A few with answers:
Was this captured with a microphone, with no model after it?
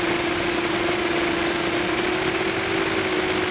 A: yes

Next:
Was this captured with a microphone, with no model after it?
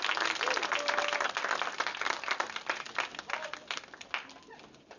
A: yes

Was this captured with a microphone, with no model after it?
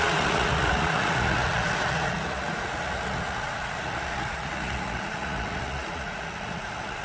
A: no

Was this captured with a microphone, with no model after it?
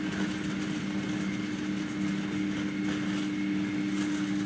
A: yes